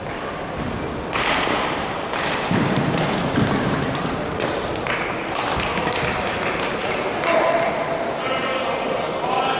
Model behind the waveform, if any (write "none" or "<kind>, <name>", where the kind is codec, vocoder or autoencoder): vocoder, BigVGAN v2